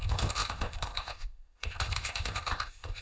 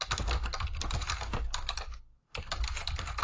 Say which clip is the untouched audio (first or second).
second